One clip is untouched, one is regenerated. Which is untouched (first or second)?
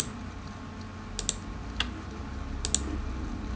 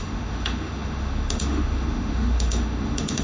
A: first